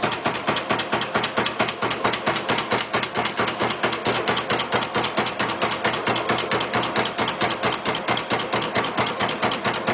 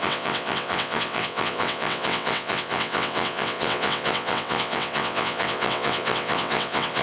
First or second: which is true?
first